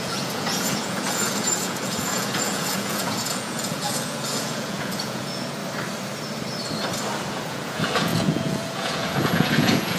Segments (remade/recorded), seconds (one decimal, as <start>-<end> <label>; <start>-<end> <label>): 0.0-5.6 remade; 5.6-7.3 recorded; 7.3-10.0 remade